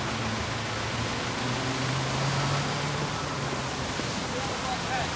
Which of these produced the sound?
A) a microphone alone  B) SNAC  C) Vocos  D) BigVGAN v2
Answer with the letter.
A